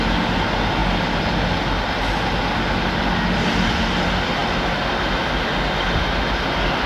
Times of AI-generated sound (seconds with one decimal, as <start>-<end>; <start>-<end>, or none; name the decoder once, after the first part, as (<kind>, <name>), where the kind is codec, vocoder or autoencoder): none